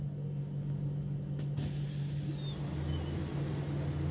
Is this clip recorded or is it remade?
recorded